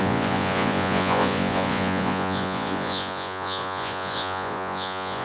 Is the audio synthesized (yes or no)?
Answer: yes